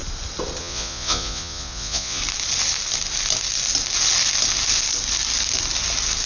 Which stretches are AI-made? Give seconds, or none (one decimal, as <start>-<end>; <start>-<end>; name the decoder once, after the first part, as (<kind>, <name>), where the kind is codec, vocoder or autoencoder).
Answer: 0.6-2.2 (vocoder, Vocos)